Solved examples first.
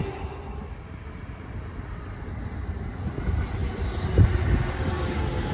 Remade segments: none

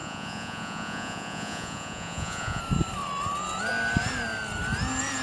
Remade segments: 0.0-2.6

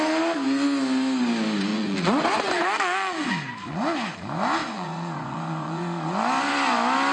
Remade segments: 1.7-3.3; 4.6-5.8